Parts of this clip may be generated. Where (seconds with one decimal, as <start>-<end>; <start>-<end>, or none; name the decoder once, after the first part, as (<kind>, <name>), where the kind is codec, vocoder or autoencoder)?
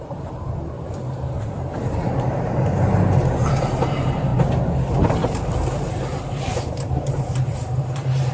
0.0-4.3 (vocoder, BigVGAN v2); 6.2-8.3